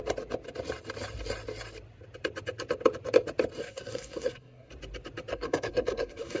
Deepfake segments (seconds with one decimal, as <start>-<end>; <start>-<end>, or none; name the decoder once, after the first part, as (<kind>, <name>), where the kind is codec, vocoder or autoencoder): 3.6-4.7 (codec, SNAC); 5.3-6.4